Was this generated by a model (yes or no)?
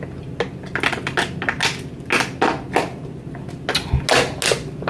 no